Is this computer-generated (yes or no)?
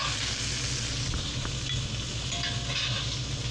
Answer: no